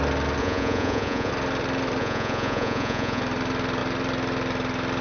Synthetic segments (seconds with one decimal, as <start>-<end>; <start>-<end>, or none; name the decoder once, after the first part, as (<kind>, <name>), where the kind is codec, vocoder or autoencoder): 0.4-1.3 (vocoder, Vocos); 2.0-3.2